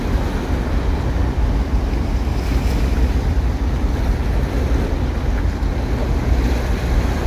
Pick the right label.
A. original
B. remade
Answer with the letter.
A